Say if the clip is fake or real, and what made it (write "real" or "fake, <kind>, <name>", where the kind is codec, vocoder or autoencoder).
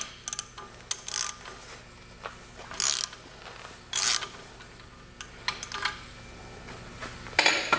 real